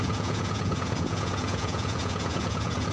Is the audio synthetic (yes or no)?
yes